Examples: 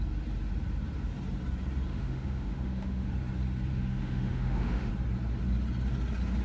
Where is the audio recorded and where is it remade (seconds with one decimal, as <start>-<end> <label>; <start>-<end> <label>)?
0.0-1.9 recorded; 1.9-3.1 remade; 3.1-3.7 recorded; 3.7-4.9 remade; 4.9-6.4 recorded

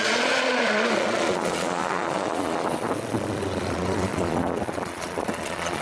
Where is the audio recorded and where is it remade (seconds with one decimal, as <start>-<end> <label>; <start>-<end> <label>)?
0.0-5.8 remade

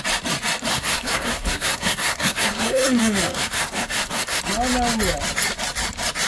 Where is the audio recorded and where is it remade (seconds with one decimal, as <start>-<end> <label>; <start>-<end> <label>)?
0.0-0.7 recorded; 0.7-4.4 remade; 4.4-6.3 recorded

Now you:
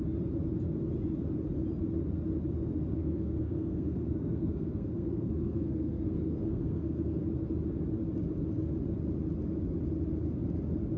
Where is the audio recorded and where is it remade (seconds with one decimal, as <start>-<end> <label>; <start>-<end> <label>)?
0.0-2.9 recorded; 2.9-7.2 remade; 7.2-11.0 recorded

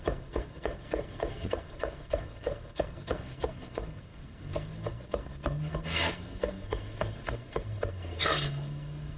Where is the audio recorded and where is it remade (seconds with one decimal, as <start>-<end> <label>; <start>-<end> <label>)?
0.0-9.2 remade

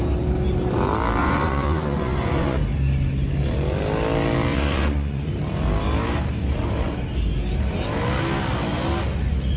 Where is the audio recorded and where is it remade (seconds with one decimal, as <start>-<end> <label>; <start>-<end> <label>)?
0.0-1.2 recorded; 1.2-2.6 remade; 2.6-4.5 recorded; 4.5-5.3 remade; 5.3-9.6 recorded